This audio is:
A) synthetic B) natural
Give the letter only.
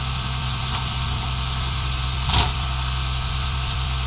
A